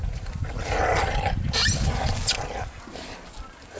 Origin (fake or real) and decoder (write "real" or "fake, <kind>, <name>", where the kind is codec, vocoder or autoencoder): real